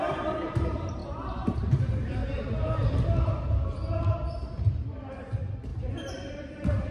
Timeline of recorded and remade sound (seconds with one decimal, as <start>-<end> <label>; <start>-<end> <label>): 0.0-2.2 remade; 2.2-5.1 recorded; 5.1-6.9 remade